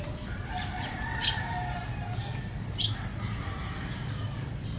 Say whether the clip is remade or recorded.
remade